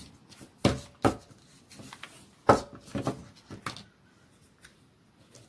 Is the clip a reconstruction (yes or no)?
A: no